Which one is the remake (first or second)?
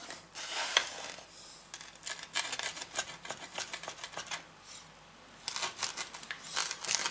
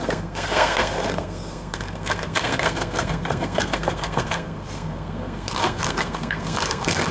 second